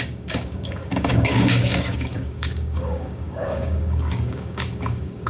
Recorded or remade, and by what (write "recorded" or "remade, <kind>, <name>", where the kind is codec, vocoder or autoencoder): remade, codec, DAC